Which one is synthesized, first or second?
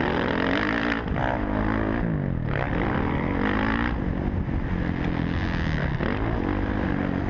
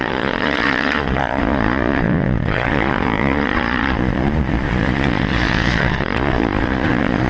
second